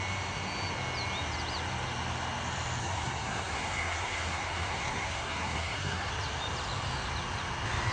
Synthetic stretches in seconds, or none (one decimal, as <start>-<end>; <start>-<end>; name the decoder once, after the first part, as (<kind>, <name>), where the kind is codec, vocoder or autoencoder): 2.8-6.1 (codec, SNAC)